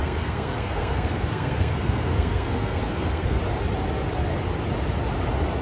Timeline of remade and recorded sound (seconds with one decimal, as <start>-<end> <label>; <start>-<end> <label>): 0.0-3.4 remade; 3.4-5.6 recorded